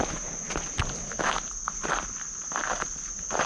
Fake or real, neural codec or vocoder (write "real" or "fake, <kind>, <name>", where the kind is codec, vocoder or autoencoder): real